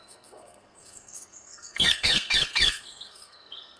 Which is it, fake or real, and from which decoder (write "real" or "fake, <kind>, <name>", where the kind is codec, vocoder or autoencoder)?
fake, codec, SNAC